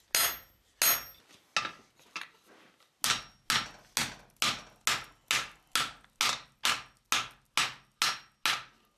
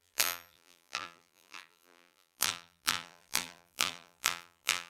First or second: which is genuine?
first